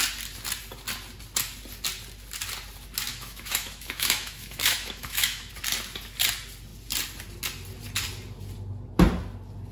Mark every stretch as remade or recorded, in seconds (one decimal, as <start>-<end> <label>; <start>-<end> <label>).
0.0-3.1 recorded; 3.1-5.5 remade; 5.5-9.7 recorded